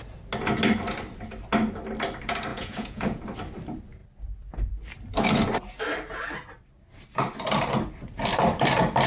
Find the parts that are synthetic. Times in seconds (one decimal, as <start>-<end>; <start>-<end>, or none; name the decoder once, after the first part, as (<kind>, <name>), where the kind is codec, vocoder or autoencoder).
2.5-3.2 (vocoder, Vocos)

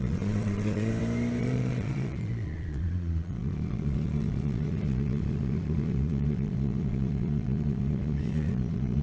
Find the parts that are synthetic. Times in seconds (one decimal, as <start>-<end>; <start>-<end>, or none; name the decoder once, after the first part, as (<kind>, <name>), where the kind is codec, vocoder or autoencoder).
0.0-0.9 (vocoder, Vocos); 1.4-9.0

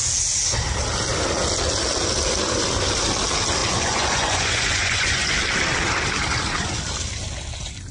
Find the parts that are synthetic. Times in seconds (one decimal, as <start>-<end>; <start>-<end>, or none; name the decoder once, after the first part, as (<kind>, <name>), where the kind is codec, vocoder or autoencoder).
3.6-5.3 (vocoder, Vocos)

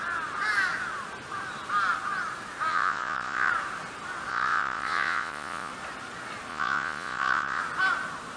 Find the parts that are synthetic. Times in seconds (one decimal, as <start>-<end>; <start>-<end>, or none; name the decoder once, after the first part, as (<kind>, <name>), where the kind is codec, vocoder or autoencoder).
2.7-3.5 (vocoder, Vocos); 4.3-5.7; 6.5-7.6